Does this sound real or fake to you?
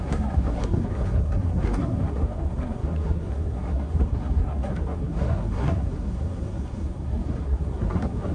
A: fake